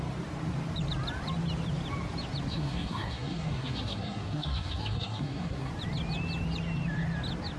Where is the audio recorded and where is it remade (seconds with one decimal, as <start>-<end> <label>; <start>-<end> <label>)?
0.0-2.5 recorded; 2.5-5.7 remade; 5.7-7.6 recorded